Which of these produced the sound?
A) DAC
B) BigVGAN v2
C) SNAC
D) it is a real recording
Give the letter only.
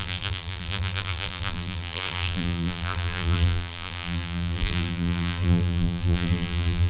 B